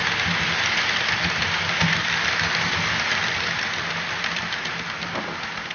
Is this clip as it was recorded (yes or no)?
yes